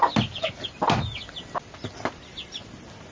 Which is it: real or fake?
real